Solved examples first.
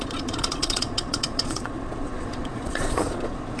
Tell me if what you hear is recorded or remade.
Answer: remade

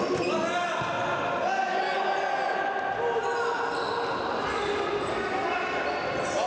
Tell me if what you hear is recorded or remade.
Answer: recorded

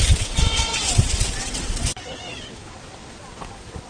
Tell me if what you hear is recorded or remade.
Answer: remade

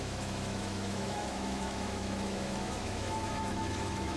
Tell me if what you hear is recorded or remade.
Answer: remade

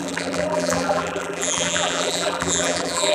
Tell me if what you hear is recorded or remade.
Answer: remade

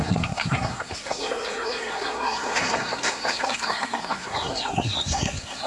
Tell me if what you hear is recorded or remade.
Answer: remade